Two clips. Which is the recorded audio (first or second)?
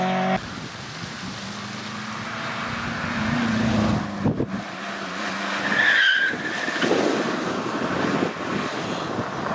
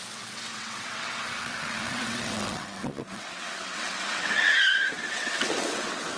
first